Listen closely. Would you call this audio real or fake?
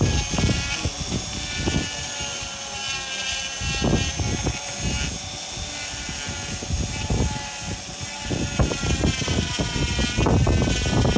real